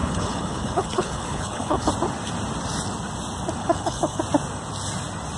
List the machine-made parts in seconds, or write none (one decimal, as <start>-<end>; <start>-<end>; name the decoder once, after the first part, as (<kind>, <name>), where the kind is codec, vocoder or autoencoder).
0.0-1.9 (codec, HILCodec); 3.6-4.2